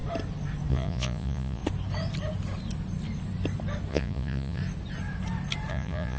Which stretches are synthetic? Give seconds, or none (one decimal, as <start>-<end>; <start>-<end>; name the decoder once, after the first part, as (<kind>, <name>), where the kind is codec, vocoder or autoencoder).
0.7-1.6 (vocoder, Vocos); 3.9-4.6; 5.7-6.2